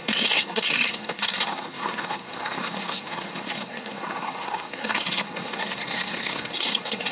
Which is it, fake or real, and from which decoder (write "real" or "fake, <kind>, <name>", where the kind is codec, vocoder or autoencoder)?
fake, codec, SNAC